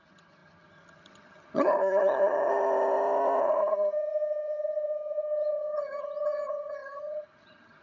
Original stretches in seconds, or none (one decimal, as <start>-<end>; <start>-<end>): 2.5-3.4

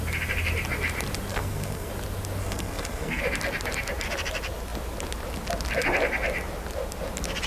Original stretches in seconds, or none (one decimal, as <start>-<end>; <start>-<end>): 0.0-1.3; 1.9-2.4; 3.2-7.5